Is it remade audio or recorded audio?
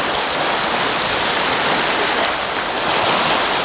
recorded